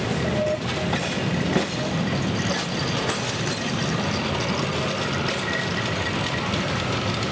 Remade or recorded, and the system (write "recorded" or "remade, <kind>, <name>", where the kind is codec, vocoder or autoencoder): recorded